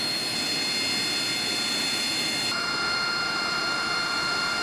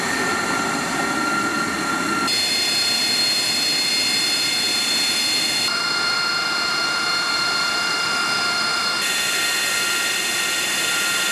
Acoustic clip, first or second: first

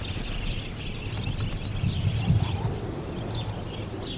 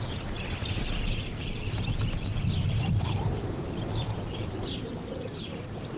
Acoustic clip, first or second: first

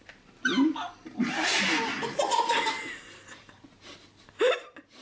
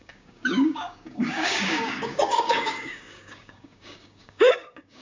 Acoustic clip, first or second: first